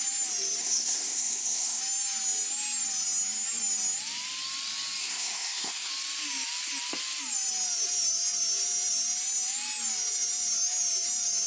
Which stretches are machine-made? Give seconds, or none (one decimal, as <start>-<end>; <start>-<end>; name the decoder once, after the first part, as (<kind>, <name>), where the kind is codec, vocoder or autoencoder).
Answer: 0.6-1.8 (codec, SNAC); 5.0-5.9